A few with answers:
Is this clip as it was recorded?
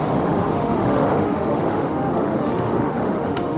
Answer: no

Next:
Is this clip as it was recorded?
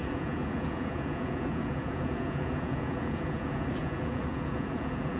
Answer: no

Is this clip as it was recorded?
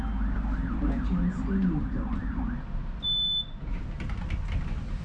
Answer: yes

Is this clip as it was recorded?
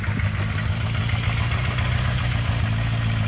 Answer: yes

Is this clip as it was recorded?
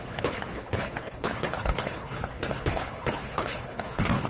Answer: no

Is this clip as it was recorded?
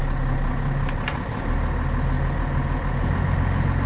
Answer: yes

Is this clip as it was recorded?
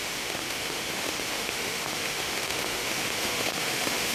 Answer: no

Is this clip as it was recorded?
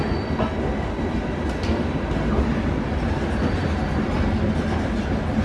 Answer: yes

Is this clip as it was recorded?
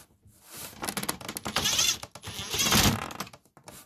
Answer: yes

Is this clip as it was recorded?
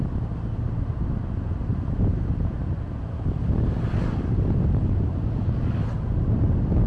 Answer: yes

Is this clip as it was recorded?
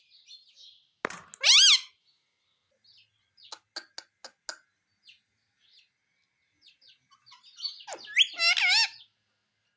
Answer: yes